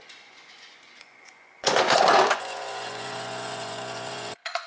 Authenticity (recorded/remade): remade